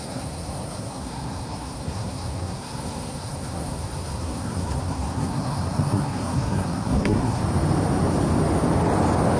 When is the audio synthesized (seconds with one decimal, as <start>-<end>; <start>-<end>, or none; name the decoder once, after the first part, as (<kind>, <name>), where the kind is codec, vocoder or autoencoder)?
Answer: 0.0-7.4 (codec, SNAC)